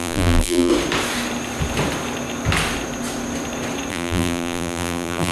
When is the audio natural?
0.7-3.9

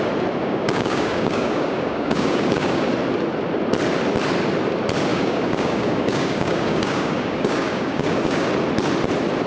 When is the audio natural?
0.0-0.4; 2.9-5.1; 8.5-9.5

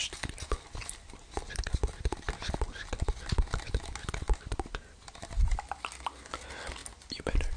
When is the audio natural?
0.0-7.6